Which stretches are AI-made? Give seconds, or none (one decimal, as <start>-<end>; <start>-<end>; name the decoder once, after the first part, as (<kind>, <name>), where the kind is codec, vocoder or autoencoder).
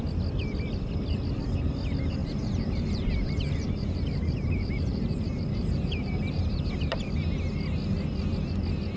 2.2-7.0 (vocoder, BigVGAN v2)